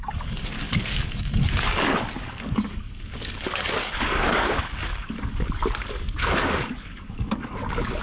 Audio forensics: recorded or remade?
remade